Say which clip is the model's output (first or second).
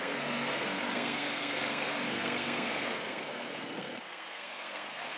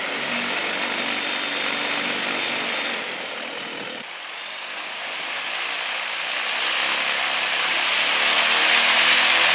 first